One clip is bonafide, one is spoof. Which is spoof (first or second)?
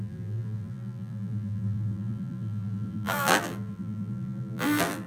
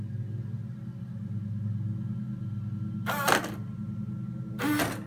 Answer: first